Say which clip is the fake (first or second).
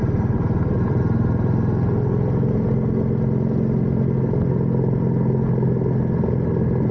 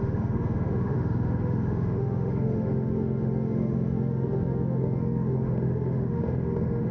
second